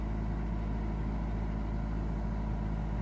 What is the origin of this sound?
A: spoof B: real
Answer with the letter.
B